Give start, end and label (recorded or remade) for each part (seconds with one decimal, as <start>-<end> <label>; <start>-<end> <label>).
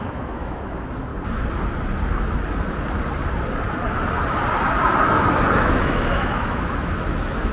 0.0-1.1 remade; 1.1-5.6 recorded; 5.6-7.5 remade